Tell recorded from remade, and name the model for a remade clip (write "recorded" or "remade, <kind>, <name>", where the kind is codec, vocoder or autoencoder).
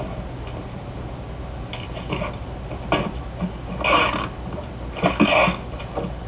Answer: recorded